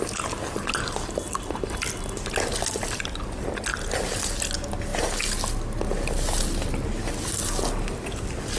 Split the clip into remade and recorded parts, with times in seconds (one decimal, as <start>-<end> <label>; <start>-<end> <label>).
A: 0.0-8.6 recorded